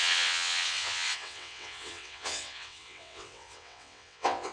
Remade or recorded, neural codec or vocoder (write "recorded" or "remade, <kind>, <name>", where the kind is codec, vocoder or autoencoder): remade, vocoder, WaveNeXt